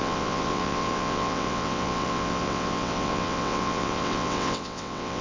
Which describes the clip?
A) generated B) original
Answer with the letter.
A